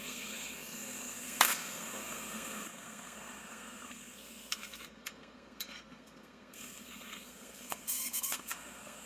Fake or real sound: fake